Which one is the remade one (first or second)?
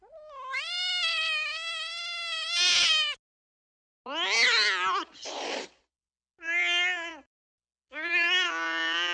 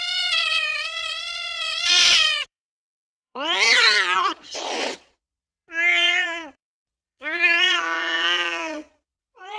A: second